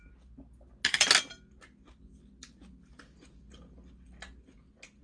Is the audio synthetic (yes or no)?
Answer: no